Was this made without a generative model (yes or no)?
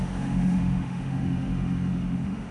no